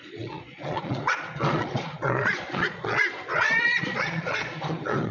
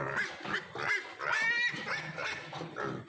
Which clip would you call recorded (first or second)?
second